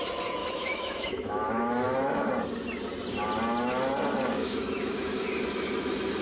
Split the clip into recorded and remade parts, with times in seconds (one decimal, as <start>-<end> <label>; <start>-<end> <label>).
0.0-0.4 recorded; 0.4-2.3 remade; 2.3-4.4 recorded; 4.4-5.4 remade; 5.4-6.2 recorded